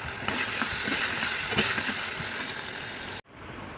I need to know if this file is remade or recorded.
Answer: recorded